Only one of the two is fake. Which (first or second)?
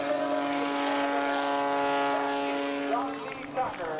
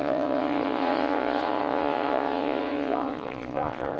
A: second